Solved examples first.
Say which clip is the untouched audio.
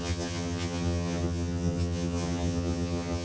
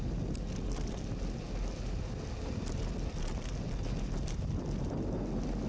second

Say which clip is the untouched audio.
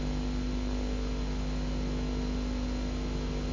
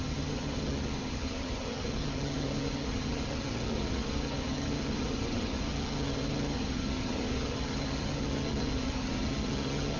first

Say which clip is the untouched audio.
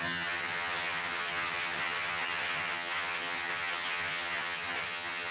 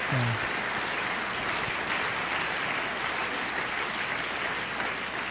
second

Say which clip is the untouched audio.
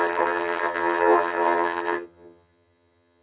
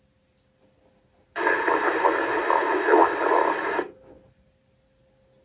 second